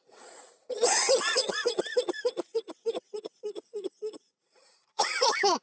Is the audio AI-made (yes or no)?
yes